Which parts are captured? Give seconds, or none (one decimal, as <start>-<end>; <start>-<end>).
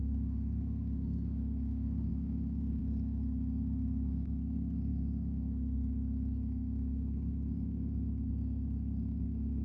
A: none